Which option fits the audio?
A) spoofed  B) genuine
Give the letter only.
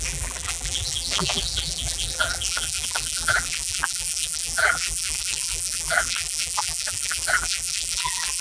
A